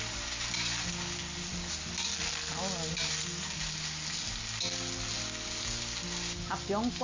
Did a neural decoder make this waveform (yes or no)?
no